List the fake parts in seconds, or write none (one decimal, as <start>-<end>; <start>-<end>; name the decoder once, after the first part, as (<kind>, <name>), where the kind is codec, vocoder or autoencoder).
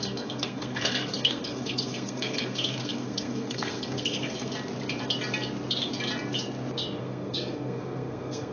0.0-4.5 (codec, SNAC); 7.0-8.5